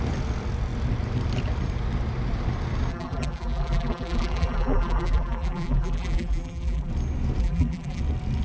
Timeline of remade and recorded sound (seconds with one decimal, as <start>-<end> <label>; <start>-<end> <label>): 0.0-2.9 recorded; 2.9-6.9 remade; 6.9-7.4 recorded; 7.4-8.0 remade; 8.0-8.4 recorded